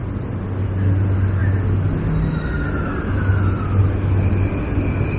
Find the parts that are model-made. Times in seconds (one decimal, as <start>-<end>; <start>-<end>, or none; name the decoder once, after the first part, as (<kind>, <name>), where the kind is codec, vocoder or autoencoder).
none